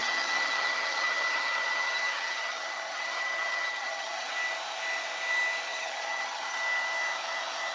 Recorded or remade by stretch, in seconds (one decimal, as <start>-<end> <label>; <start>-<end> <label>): 0.0-4.3 remade; 4.3-5.7 recorded; 5.7-6.6 remade; 6.6-7.7 recorded